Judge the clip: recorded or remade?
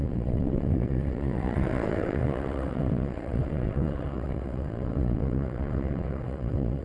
remade